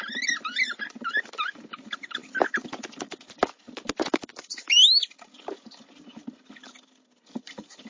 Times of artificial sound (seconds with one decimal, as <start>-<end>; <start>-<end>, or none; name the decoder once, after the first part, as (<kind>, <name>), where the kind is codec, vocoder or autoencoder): none